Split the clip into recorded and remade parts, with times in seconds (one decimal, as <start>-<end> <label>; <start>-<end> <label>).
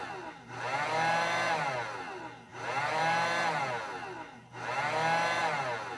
0.0-6.0 recorded